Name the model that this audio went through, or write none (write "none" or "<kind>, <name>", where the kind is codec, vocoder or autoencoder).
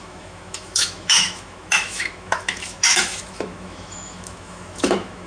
autoencoder, DAC-VAE